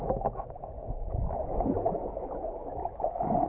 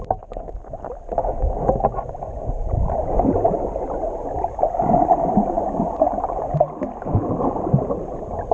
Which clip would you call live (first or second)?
second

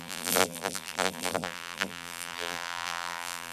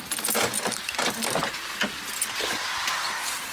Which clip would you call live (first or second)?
second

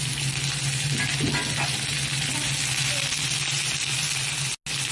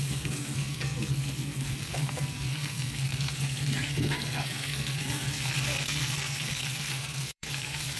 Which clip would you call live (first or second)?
first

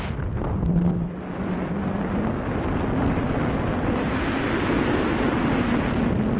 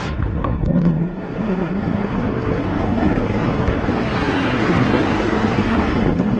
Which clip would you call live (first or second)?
first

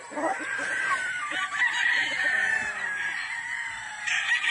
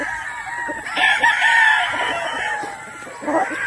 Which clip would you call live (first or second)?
second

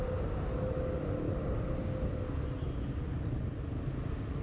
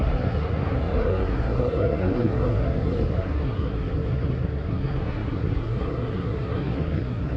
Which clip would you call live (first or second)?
first